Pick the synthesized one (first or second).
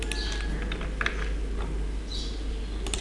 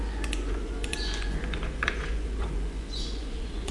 second